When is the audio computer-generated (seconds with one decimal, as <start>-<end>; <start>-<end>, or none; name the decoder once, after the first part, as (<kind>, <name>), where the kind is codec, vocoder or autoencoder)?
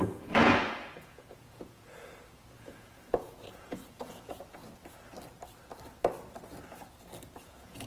0.0-4.6 (vocoder, Vocos); 7.4-7.9